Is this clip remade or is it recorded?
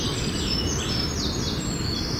recorded